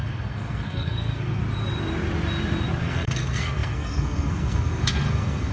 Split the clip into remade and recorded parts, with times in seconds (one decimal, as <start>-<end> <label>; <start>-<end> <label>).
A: 0.0-1.4 remade; 1.4-2.8 recorded; 2.8-5.5 remade